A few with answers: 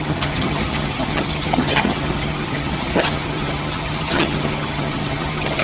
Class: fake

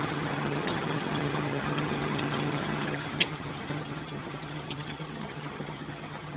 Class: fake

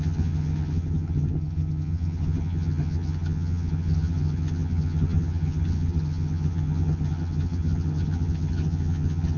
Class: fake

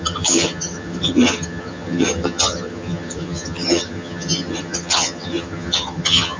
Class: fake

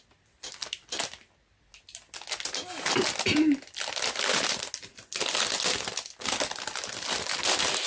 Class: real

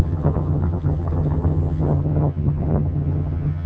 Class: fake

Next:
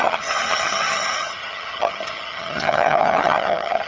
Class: fake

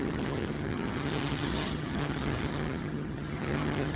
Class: fake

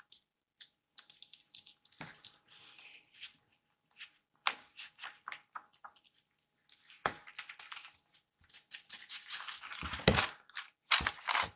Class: real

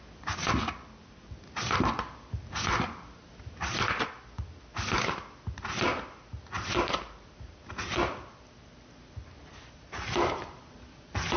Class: real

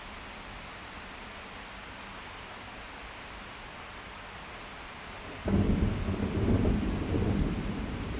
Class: real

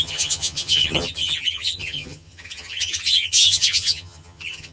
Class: fake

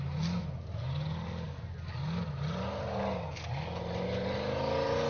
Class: real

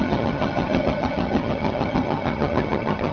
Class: fake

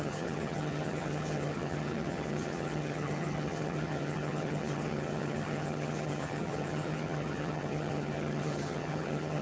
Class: fake